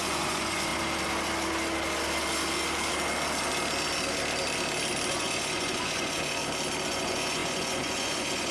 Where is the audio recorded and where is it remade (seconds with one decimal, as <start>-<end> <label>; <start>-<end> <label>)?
0.0-0.7 remade; 0.7-5.1 recorded; 5.1-6.4 remade; 6.4-6.9 recorded; 6.9-8.5 remade

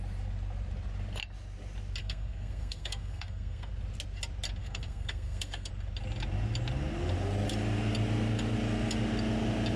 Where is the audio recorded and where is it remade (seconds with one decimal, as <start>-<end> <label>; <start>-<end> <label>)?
0.0-2.0 recorded; 2.0-3.7 remade; 3.7-4.6 recorded; 4.6-5.7 remade; 5.7-9.8 recorded

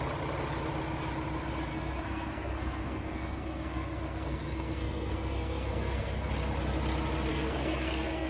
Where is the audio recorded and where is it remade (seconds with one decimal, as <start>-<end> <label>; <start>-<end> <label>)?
0.0-1.7 recorded; 1.7-6.3 remade; 6.3-7.3 recorded; 7.3-8.3 remade

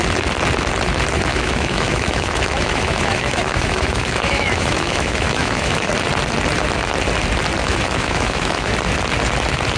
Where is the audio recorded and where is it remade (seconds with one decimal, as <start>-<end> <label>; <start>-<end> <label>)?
0.0-1.3 recorded; 1.3-5.9 remade; 5.9-7.6 recorded; 7.6-8.7 remade; 8.7-9.8 recorded